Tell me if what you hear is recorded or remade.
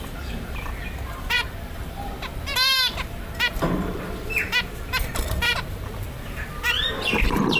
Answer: remade